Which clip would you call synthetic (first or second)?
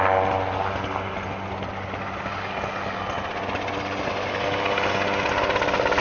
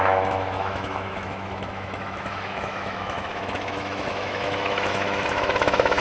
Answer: second